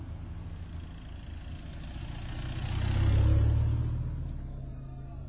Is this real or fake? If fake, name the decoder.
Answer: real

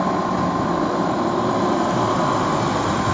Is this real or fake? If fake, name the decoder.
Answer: real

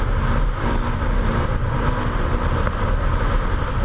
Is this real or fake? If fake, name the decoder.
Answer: real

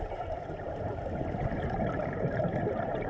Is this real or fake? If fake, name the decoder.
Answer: fake, vocoder, BigVGAN v2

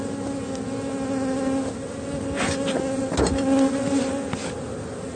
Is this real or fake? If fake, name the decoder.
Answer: real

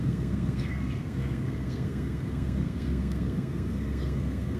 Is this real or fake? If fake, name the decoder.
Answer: fake, codec, SNAC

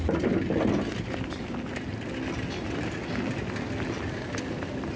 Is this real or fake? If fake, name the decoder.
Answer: real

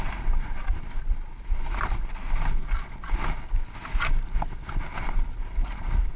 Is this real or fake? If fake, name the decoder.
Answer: real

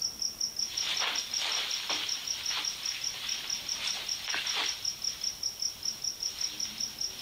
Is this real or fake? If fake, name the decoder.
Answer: real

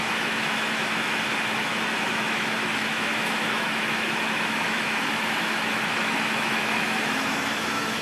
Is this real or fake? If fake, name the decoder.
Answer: fake, autoencoder, DAC-VAE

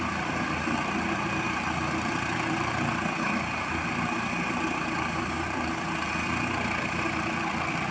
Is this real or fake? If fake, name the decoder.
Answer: fake, vocoder, BigVGAN v2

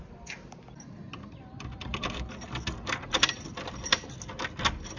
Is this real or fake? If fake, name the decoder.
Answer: real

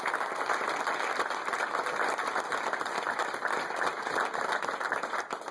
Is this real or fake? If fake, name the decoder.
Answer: real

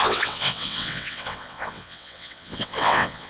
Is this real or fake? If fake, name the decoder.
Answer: fake, vocoder, WaveNeXt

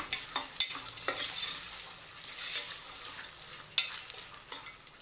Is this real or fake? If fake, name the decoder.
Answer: real